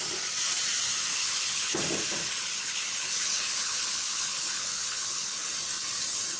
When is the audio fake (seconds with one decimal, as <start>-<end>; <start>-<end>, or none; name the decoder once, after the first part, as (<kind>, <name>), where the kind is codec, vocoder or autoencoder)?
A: 1.1-1.8 (codec, HILCodec); 2.2-5.5